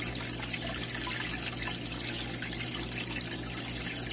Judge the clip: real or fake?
real